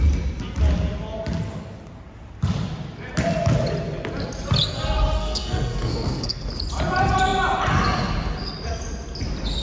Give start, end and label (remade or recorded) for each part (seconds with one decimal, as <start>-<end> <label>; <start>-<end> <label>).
0.0-5.2 recorded; 5.2-6.5 remade; 6.5-9.6 recorded